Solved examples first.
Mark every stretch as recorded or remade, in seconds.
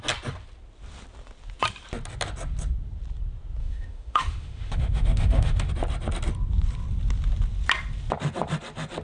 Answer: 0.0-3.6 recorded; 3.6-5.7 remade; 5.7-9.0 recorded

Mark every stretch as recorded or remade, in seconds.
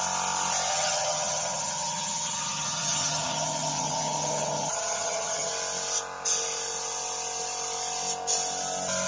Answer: 0.0-0.7 recorded; 0.7-5.5 remade; 5.5-9.1 recorded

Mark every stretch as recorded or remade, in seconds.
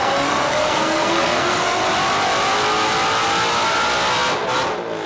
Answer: 0.0-1.8 remade; 1.8-5.1 recorded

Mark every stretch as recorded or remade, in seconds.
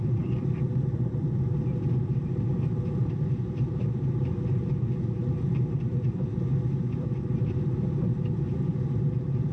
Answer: 0.0-5.2 remade; 5.2-5.8 recorded; 5.8-6.5 remade; 6.5-7.4 recorded; 7.4-9.5 remade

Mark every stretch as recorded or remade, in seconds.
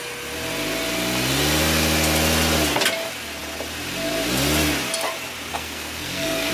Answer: 0.0-5.5 recorded; 5.5-6.5 remade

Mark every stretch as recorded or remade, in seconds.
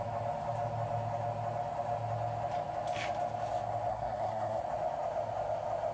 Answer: 0.0-3.9 recorded; 3.9-4.6 remade; 4.6-5.9 recorded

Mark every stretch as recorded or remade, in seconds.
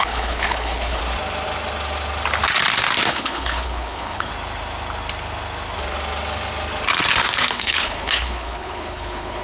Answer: 0.0-1.0 remade; 1.0-3.1 recorded; 3.1-4.3 remade; 4.3-7.6 recorded; 7.6-9.4 remade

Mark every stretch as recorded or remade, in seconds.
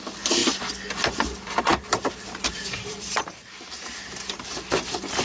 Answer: 0.0-0.4 remade; 0.4-0.9 recorded; 0.9-5.2 remade